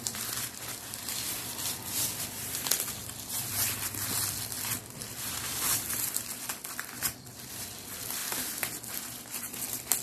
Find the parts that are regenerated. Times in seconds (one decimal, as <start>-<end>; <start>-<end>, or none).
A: 0.0-8.2; 8.9-10.0